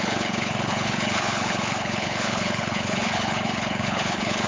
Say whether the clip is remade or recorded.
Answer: remade